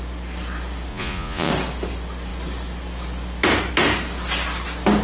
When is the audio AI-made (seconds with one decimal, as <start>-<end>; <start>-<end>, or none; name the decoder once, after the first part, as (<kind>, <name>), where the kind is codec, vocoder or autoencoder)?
0.9-1.5 (vocoder, Vocos)